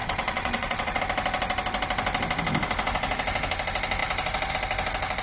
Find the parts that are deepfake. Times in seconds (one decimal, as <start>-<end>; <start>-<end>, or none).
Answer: 0.0-1.0